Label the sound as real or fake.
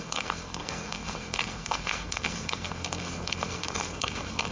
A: fake